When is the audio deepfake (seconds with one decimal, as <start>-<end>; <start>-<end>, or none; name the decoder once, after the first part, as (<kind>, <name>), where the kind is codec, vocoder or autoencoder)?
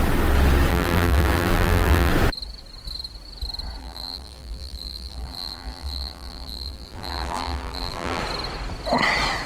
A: 0.7-2.1 (vocoder, BigVGAN v2); 3.8-8.2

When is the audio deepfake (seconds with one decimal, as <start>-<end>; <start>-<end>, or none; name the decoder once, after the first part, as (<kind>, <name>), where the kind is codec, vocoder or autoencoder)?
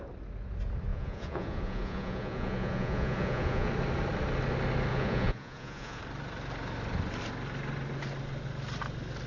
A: 0.9-3.7 (vocoder, Vocos); 4.9-6.0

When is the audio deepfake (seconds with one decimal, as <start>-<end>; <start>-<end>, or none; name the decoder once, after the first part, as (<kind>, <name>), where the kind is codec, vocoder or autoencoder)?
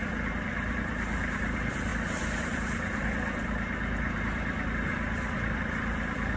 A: 0.0-1.9 (vocoder, BigVGAN v2); 2.4-6.4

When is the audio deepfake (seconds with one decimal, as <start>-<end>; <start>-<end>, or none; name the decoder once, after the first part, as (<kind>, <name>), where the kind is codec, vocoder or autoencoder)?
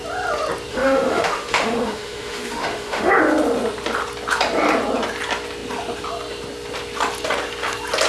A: 0.7-3.2 (autoencoder, DAC-VAE)